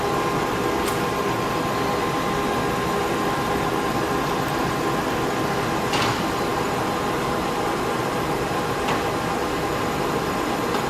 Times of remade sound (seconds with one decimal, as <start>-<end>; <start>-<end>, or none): none